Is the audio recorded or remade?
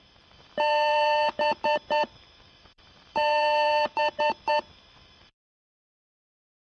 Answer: remade